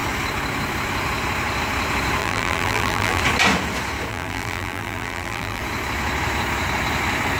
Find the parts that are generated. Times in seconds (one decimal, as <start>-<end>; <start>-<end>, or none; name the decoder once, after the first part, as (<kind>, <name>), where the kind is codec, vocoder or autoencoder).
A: 2.2-3.2 (vocoder, BigVGAN v2); 4.1-5.6